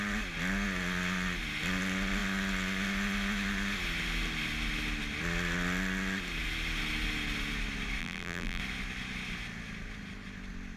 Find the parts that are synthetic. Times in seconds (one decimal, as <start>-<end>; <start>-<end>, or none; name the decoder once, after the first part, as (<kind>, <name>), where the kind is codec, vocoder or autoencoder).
8.0-8.6 (vocoder, BigVGAN v2)